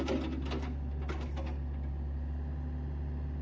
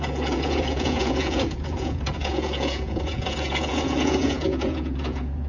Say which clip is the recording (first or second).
first